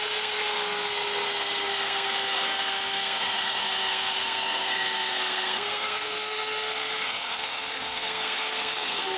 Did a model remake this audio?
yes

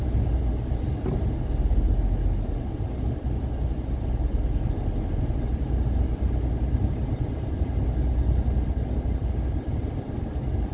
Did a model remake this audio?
no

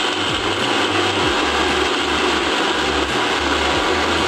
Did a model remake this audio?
no